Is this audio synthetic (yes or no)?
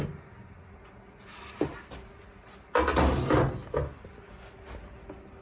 no